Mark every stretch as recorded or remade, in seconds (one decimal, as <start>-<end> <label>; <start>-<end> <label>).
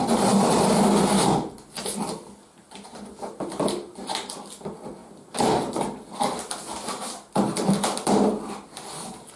0.0-9.4 recorded